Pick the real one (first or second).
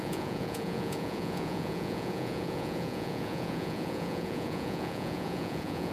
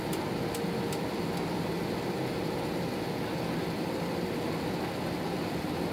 second